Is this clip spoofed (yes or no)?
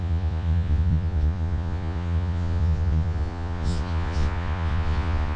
yes